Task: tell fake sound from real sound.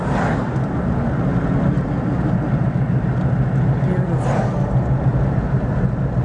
real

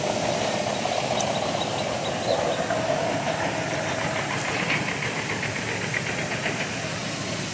real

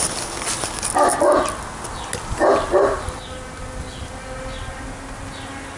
real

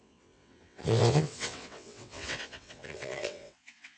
fake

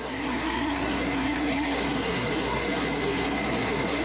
fake